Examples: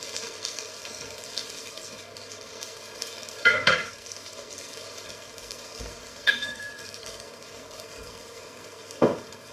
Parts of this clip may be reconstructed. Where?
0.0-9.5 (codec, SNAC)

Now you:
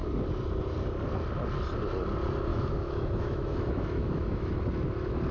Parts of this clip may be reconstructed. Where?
2.5-4.5 (autoencoder, DAC-VAE)

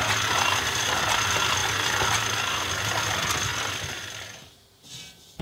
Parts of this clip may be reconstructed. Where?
none

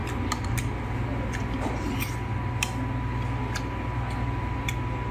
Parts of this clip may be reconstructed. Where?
none